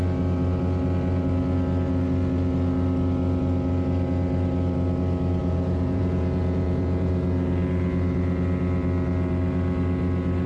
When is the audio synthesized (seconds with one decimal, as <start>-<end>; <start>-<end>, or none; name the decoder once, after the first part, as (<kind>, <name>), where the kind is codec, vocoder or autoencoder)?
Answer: 5.4-7.1 (vocoder, Vocos)